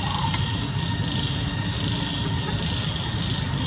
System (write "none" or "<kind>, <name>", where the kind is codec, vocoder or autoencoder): none